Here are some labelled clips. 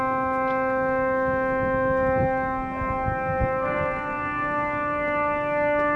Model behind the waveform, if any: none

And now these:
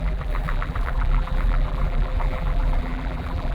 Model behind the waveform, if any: vocoder, BigVGAN v2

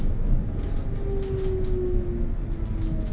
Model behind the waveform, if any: none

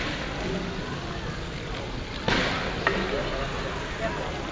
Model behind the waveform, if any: none